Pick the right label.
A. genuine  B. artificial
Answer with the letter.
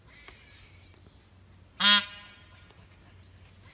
A